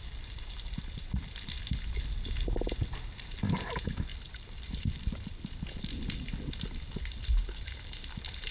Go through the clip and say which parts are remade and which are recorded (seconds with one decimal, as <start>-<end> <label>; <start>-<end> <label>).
0.0-4.1 recorded; 4.1-5.8 remade; 5.8-8.5 recorded